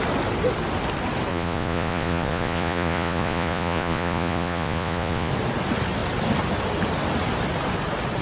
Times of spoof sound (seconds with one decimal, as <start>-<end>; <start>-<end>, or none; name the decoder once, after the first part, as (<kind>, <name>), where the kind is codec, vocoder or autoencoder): 1.3-5.3 (vocoder, Vocos)